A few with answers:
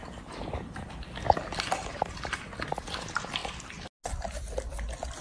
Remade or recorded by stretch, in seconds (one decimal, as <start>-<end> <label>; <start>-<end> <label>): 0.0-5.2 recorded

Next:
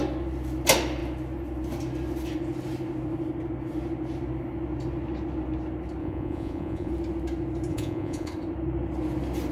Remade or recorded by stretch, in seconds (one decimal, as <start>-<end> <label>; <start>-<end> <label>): 0.0-6.0 recorded; 6.0-6.9 remade; 6.9-7.7 recorded; 7.7-8.3 remade; 8.3-9.5 recorded

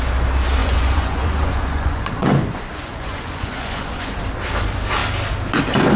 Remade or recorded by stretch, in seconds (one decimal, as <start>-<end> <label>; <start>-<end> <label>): 0.0-0.6 recorded; 0.6-4.2 remade; 4.2-6.0 recorded

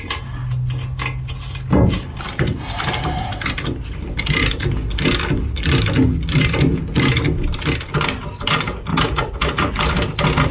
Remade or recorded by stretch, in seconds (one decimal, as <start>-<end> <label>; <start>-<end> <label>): 0.0-8.9 recorded; 8.9-9.7 remade; 9.7-10.5 recorded

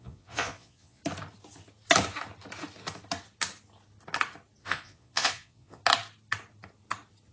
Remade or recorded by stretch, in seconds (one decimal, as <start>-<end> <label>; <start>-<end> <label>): 0.0-1.0 remade; 1.0-4.6 recorded; 4.6-5.8 remade; 5.8-7.3 recorded

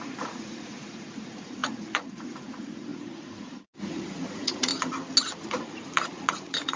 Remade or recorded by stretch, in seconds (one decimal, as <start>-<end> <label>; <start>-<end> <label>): 0.0-4.7 remade; 4.7-5.4 recorded; 5.4-6.8 remade

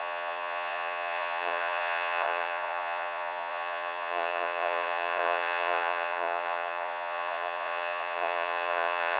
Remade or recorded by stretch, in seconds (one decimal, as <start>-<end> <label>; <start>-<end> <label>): 0.0-9.2 remade